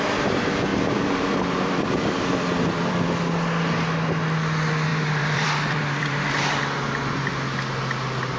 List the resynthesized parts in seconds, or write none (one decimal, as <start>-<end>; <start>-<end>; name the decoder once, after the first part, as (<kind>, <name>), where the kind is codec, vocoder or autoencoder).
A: 0.7-3.0 (vocoder, BigVGAN v2); 4.9-6.6